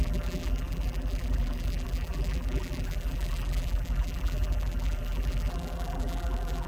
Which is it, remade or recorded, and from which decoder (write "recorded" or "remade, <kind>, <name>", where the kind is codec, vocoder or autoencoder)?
remade, vocoder, BigVGAN v2